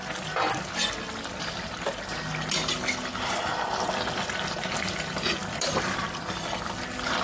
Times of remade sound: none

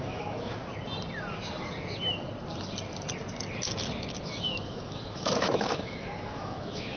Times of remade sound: 0.0-0.6; 4.1-7.0

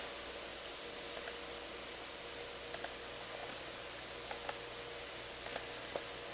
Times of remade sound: none

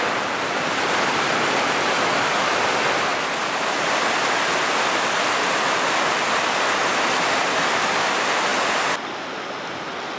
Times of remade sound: none